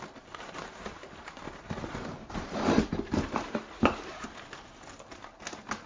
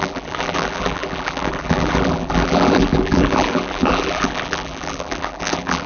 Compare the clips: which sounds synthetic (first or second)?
second